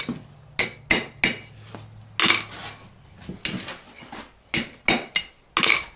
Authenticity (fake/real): real